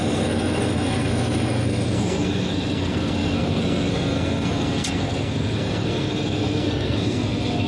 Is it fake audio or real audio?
fake